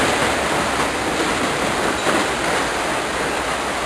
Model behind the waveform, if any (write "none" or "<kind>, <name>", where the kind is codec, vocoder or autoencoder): none